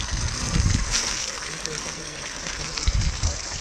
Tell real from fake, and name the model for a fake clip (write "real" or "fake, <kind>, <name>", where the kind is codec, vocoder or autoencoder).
fake, codec, SNAC